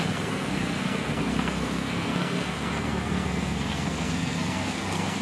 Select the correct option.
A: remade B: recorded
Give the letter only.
A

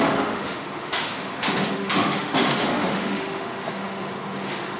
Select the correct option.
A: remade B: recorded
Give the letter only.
A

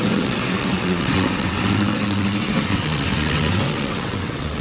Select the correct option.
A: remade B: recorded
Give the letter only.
A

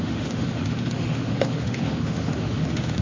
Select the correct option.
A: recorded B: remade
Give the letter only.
B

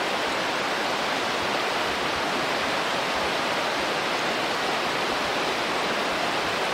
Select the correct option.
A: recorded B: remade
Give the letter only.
A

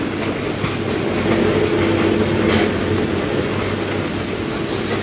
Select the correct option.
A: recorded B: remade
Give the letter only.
A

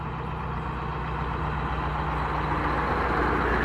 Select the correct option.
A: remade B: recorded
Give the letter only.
B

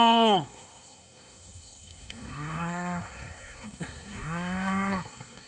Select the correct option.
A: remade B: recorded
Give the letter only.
A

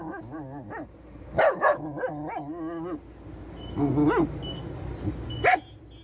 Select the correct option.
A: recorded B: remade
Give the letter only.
A